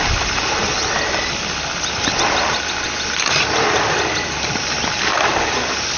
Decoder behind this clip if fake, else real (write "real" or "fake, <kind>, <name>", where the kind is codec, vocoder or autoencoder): real